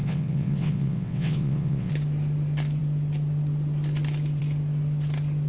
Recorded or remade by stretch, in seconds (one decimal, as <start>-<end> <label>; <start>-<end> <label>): 0.0-1.9 remade; 1.9-5.5 recorded